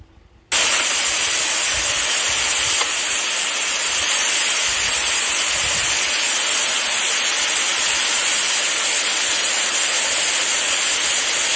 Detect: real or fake real